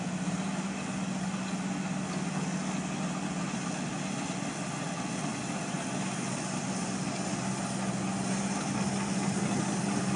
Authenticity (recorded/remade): recorded